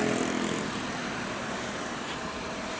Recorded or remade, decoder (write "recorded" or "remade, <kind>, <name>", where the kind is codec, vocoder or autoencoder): recorded